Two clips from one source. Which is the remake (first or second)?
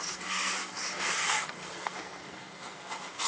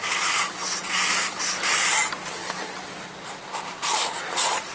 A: first